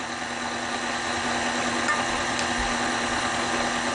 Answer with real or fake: real